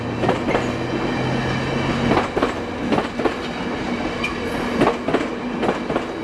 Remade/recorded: recorded